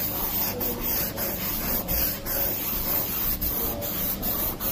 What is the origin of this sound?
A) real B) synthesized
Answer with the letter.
A